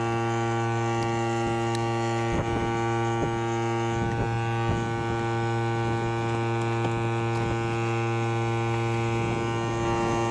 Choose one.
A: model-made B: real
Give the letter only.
B